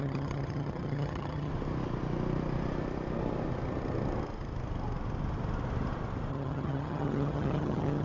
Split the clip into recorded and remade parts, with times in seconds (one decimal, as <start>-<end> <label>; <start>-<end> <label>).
0.0-1.5 remade; 1.5-6.3 recorded; 6.3-8.0 remade

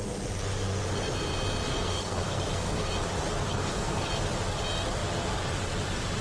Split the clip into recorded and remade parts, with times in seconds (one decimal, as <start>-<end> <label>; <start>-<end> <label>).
0.0-1.7 recorded; 1.7-2.9 remade; 2.9-3.5 recorded; 3.5-4.1 remade; 4.1-6.2 recorded

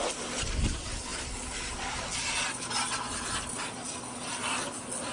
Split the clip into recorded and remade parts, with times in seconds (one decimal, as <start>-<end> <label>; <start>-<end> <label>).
0.0-5.1 recorded